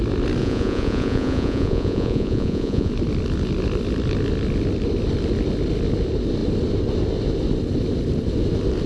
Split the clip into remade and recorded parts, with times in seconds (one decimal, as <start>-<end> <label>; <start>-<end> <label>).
0.0-0.4 recorded; 0.4-2.9 remade; 2.9-8.9 recorded